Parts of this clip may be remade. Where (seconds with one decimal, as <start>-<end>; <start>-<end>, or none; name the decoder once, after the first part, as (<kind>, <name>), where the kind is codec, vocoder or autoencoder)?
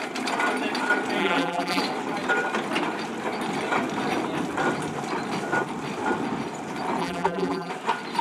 1.2-1.8 (vocoder, BigVGAN v2); 7.0-7.7